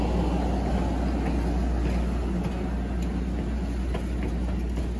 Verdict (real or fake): real